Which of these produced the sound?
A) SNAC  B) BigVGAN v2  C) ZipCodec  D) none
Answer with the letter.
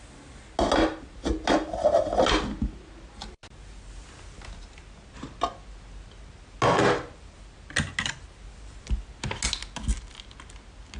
D